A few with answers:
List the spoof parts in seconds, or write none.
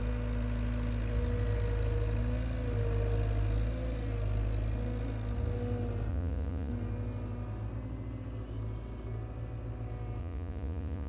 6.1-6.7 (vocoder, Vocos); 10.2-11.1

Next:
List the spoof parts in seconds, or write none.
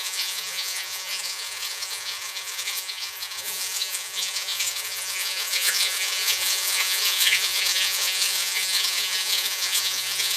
0.0-10.4 (vocoder, Vocos)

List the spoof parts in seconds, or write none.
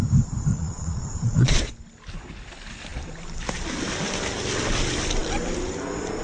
0.5-1.7 (vocoder, Vocos)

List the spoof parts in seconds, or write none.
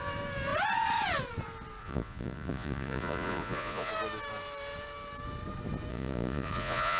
1.8-3.9 (vocoder, Vocos); 5.9-7.0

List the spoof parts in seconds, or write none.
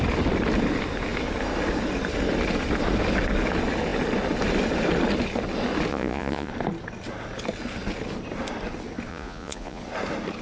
5.9-6.5 (vocoder, Vocos); 9.1-9.8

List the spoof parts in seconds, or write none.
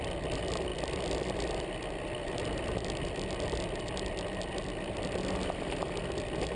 none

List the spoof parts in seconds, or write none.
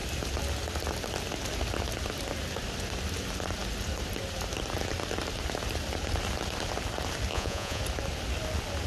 7.3-7.8 (vocoder, Vocos)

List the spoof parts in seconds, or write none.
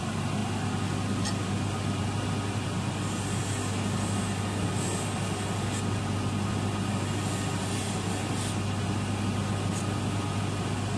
none